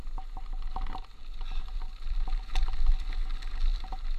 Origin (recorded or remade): recorded